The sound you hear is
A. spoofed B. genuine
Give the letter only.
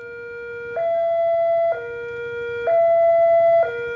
B